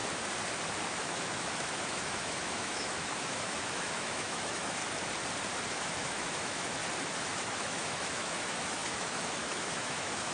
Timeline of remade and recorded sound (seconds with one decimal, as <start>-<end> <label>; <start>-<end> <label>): 0.0-1.0 recorded; 1.0-4.8 remade; 4.8-5.7 recorded; 5.7-6.8 remade; 6.8-7.3 recorded; 7.3-10.3 remade